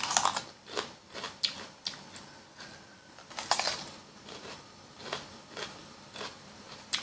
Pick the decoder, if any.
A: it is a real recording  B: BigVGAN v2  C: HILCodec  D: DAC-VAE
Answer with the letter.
A